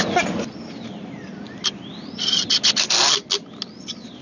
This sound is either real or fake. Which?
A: real